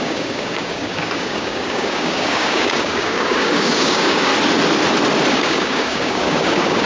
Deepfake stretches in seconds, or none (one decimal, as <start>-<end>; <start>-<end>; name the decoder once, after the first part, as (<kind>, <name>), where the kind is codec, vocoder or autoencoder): 0.0-4.3 (codec, DAC); 5.3-6.9